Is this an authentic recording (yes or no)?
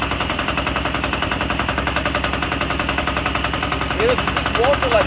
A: no